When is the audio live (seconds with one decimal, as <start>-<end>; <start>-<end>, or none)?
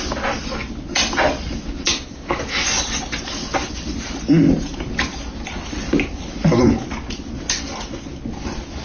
0.0-1.9; 2.4-8.8